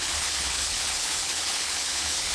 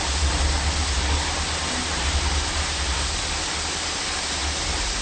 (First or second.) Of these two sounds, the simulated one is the first